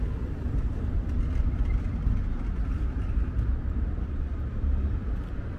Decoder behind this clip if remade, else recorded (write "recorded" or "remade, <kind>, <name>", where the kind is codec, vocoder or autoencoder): remade, vocoder, BigVGAN v2